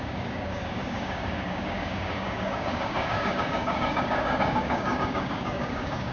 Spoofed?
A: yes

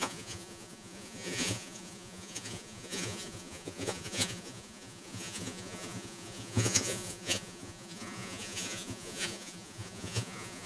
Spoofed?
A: yes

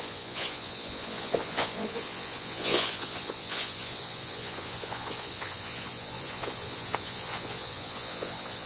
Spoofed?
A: yes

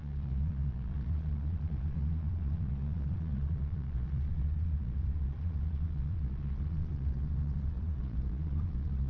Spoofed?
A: yes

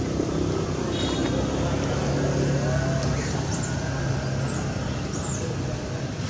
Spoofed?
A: no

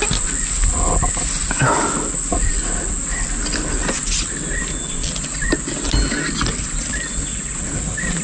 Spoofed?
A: no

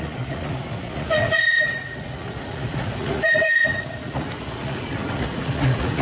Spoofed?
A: yes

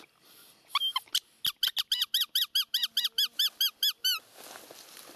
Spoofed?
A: no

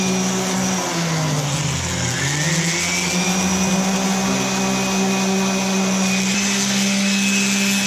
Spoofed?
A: no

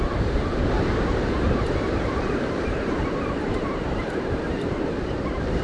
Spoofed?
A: yes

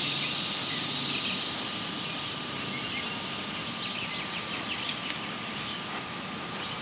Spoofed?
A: no